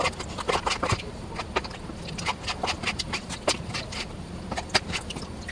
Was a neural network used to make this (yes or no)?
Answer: no